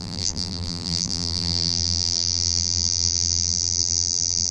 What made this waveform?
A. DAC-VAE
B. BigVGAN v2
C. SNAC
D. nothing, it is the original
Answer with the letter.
B